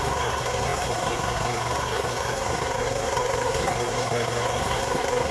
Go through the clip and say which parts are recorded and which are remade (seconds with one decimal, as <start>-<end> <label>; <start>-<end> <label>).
0.0-5.3 remade